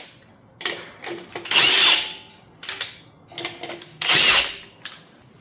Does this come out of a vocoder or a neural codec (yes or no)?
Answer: no